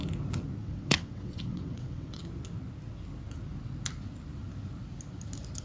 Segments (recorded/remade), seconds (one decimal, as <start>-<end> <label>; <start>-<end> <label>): 0.0-0.6 recorded; 0.6-2.2 remade; 2.2-5.6 recorded